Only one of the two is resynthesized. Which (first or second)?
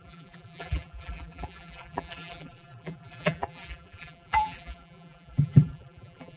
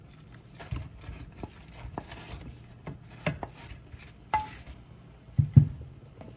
first